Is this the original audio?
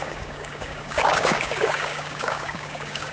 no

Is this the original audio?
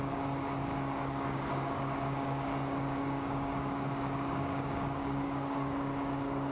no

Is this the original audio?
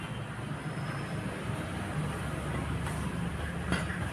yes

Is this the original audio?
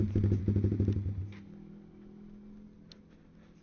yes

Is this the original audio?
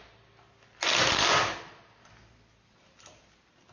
yes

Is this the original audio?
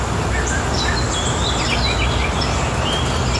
yes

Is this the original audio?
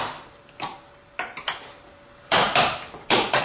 yes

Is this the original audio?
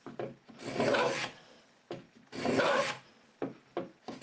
yes